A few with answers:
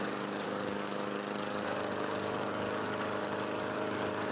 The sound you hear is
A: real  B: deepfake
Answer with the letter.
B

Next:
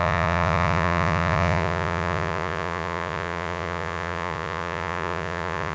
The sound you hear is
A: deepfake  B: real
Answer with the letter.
A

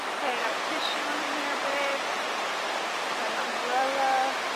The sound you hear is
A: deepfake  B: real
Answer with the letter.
B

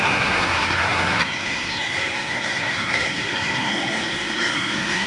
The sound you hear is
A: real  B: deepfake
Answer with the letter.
B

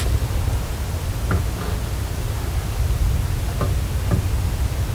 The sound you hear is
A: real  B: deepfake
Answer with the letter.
A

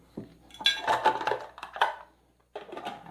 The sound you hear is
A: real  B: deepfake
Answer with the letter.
A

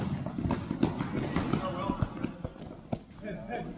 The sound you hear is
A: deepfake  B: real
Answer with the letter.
B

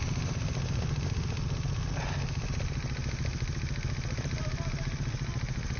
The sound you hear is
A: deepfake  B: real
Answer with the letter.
B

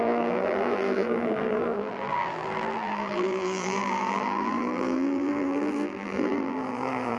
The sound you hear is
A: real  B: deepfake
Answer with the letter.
B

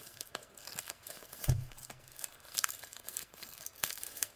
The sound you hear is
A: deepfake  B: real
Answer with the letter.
A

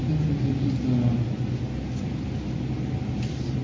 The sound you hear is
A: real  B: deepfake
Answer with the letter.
A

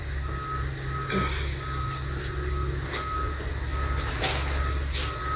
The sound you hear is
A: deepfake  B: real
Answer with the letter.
B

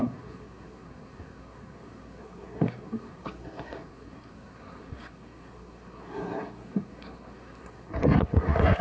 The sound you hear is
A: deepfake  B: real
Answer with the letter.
A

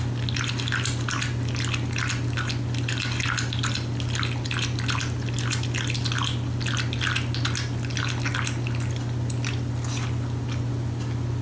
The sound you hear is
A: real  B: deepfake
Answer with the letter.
A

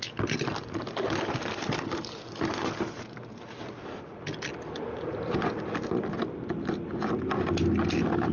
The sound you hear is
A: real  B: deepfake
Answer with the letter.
A